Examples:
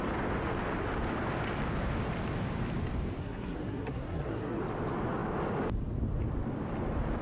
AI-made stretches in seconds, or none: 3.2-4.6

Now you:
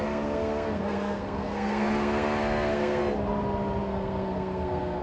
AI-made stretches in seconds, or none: 0.0-3.0; 3.8-5.0

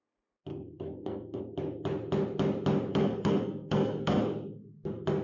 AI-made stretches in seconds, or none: 0.5-1.4; 2.9-4.2

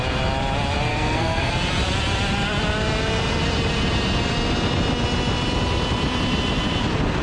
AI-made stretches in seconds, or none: 0.9-1.5

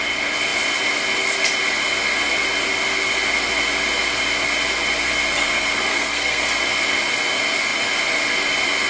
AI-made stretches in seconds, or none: 5.4-6.4

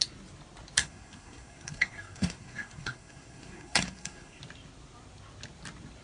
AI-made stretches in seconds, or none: 0.8-4.4

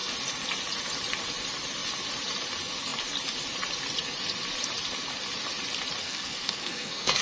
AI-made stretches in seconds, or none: 6.0-7.2

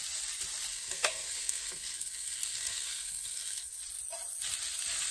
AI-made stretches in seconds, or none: 0.7-3.8